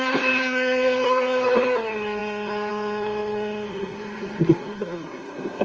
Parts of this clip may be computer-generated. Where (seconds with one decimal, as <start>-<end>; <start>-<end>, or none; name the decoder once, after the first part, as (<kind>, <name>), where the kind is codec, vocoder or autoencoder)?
0.0-5.6 (codec, SNAC)